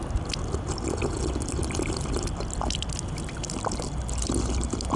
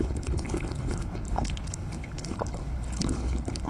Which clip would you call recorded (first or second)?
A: first